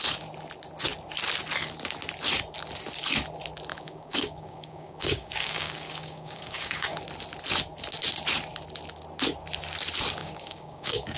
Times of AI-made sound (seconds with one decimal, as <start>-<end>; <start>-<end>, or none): 3.7-7.0; 10.2-11.2